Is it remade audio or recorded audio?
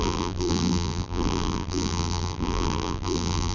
remade